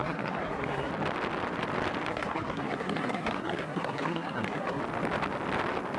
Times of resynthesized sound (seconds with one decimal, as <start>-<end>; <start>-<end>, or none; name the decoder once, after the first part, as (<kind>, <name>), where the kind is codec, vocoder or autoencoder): 0.0-0.9 (codec, SNAC); 2.1-4.8